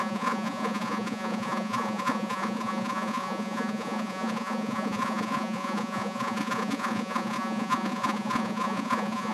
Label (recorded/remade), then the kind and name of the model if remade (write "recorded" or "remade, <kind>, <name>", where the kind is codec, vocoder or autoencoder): remade, vocoder, Vocos